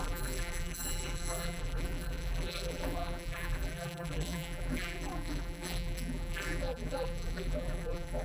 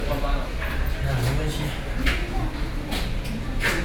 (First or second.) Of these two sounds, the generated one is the first